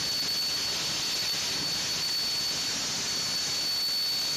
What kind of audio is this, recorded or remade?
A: recorded